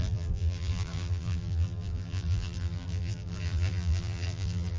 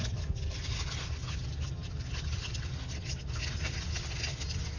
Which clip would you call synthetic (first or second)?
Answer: first